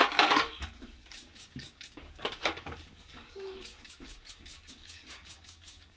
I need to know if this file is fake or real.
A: fake